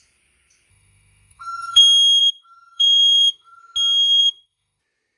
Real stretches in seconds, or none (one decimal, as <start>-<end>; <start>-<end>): 0.0-0.7; 1.8-2.2; 3.6-4.2; 4.8-5.2